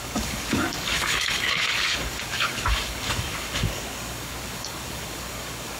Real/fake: fake